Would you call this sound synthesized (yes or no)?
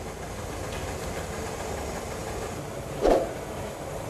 no